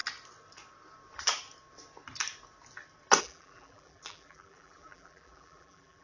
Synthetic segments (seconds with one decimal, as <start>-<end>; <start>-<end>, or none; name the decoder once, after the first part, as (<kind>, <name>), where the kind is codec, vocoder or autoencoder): 3.2-6.0 (vocoder, BigVGAN v2)